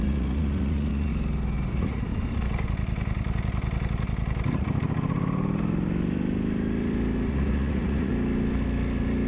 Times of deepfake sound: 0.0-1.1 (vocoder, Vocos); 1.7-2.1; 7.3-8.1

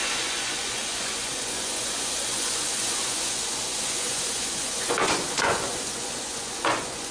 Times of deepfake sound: 0.0-7.1 (vocoder, Vocos)

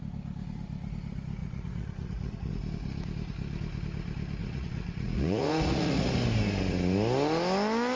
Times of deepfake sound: 1.4-2.5 (vocoder, Vocos); 4.4-6.1

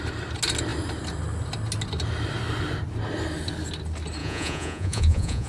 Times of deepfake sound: 4.2-5.5 (vocoder, Vocos)

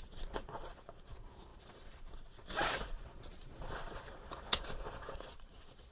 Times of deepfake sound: 0.0-5.9 (vocoder, Vocos)

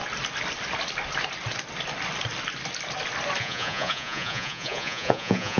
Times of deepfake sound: 3.4-5.6 (vocoder, Vocos)